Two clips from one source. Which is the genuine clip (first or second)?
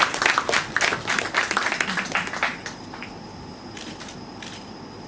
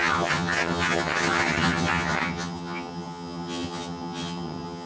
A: first